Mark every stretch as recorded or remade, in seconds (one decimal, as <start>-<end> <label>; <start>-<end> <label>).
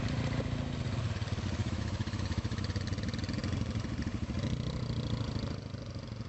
0.0-1.6 recorded; 1.6-2.8 remade; 2.8-6.3 recorded